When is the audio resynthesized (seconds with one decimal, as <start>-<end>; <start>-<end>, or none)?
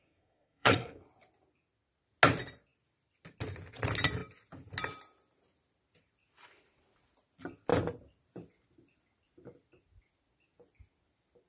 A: 0.0-1.0